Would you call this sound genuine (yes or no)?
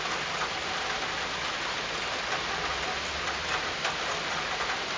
yes